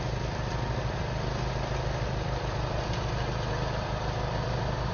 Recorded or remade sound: remade